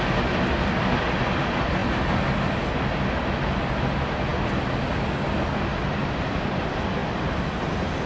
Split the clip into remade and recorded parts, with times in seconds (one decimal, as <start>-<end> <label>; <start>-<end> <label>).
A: 0.0-8.1 recorded